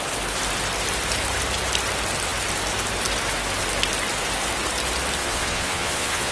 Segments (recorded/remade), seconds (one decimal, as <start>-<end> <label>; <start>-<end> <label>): 0.0-5.2 recorded; 5.2-6.3 remade